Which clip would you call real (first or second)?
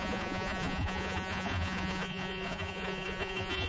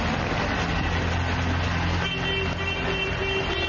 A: second